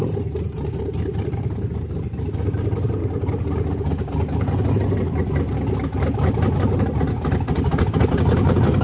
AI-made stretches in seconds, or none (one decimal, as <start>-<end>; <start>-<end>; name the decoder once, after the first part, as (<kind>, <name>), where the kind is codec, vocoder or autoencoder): 0.0-3.0 (vocoder, BigVGAN v2); 8.1-8.8